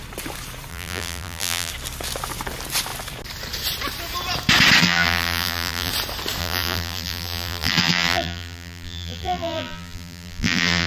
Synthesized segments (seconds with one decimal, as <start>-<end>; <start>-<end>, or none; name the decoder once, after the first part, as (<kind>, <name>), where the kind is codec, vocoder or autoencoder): 0.7-1.7 (vocoder, BigVGAN v2); 4.8-5.9; 6.4-10.9